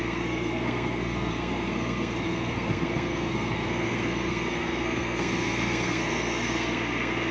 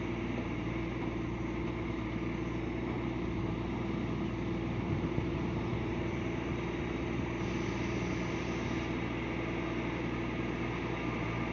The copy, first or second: first